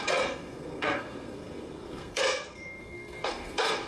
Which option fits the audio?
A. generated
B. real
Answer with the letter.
A